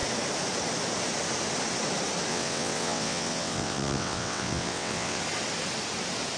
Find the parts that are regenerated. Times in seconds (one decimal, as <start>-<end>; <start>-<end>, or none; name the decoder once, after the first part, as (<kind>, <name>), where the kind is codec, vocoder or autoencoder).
2.3-5.2 (vocoder, WaveNeXt)